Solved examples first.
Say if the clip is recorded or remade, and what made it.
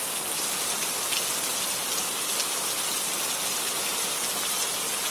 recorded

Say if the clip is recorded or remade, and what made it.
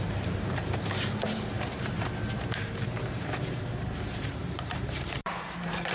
remade, vocoder, BigVGAN v2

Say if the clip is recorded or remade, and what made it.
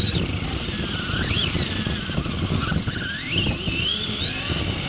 recorded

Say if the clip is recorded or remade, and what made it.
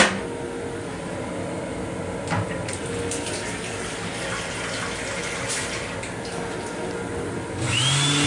recorded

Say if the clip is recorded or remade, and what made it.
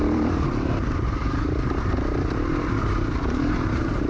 remade, vocoder, BigVGAN v2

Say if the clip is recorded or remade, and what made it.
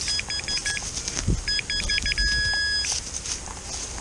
recorded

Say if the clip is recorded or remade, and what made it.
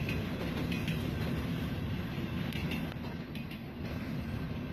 recorded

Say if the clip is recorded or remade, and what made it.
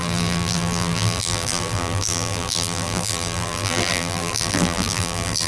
remade, vocoder, BigVGAN v2